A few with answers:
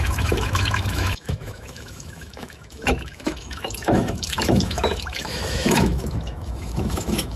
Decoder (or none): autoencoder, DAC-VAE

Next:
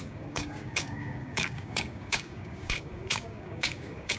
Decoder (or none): codec, DAC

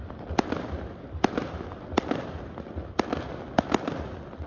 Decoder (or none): none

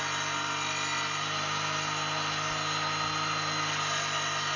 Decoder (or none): none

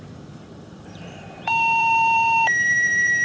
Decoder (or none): vocoder, BigVGAN v2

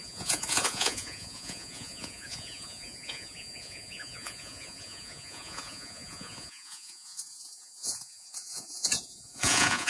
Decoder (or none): vocoder, Vocos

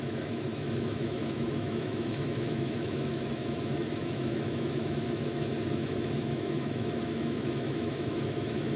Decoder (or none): autoencoder, DAC-VAE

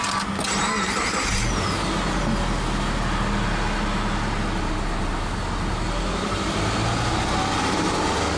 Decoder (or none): none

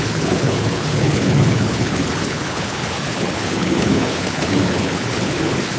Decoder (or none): codec, HILCodec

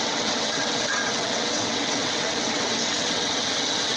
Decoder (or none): vocoder, WaveNeXt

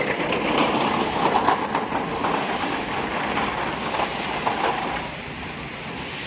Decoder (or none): none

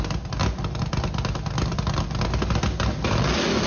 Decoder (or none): none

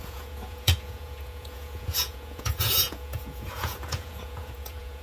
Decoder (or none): vocoder, Vocos